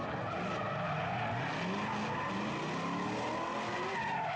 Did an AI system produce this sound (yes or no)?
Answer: no